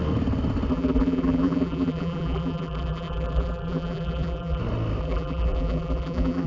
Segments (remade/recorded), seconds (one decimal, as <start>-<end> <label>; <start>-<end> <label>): 0.0-0.7 recorded; 0.7-4.6 remade; 4.6-5.0 recorded; 5.0-6.5 remade